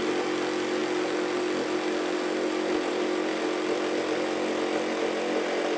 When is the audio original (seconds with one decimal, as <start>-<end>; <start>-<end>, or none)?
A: 0.0-5.8